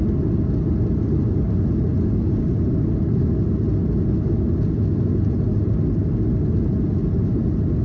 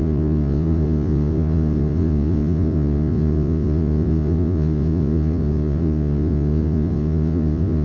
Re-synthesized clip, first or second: second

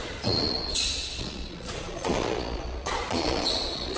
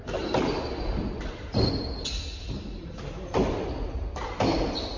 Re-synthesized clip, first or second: first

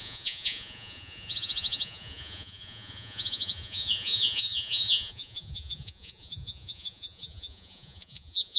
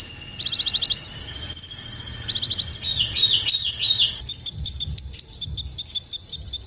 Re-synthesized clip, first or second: first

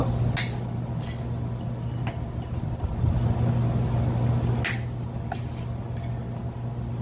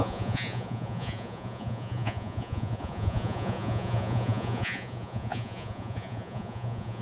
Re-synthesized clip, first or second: second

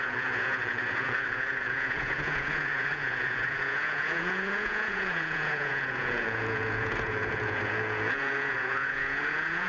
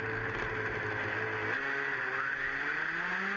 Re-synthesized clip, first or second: first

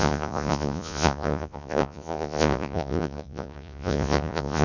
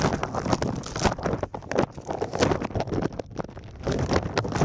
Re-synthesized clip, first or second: first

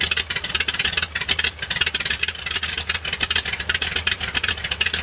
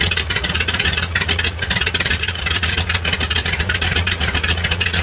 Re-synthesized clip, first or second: second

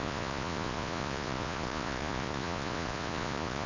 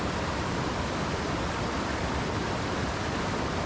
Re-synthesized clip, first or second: first